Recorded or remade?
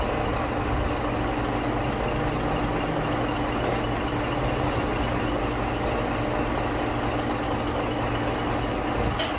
recorded